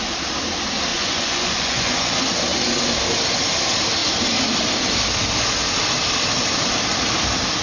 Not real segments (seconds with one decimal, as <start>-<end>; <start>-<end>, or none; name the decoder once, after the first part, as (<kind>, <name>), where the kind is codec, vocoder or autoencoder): 0.9-2.1 (vocoder, Vocos)